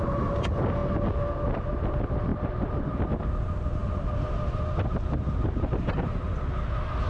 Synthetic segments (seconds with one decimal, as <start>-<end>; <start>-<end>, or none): none